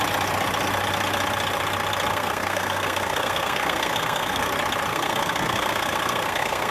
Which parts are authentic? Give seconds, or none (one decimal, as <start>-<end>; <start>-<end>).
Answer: 0.0-2.1; 4.5-4.9